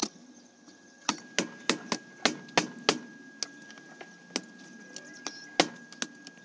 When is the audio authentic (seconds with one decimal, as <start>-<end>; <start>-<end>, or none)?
1.2-6.4